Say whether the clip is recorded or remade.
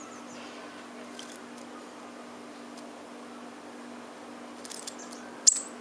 recorded